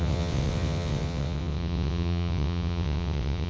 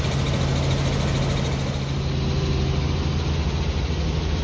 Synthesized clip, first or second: first